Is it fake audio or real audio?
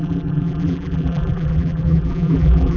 fake